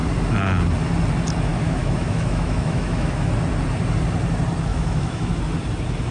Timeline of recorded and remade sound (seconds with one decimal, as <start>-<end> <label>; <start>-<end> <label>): 0.0-1.5 recorded; 1.5-3.3 remade; 3.3-4.7 recorded; 4.7-5.3 remade; 5.3-6.1 recorded